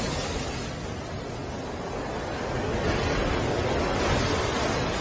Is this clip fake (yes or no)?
no